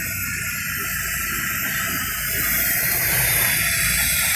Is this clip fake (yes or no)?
no